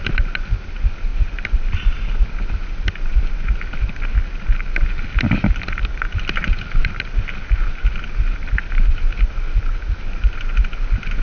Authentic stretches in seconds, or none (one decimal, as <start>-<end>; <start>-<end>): 0.0-11.2